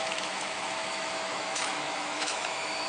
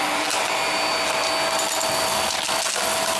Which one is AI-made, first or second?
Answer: first